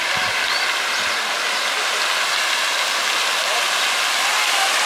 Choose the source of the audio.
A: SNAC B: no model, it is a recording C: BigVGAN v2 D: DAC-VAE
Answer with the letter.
B